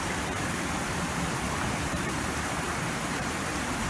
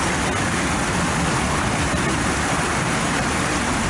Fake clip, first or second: first